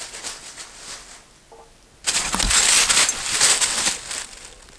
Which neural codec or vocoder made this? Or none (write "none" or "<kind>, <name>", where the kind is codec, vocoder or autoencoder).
none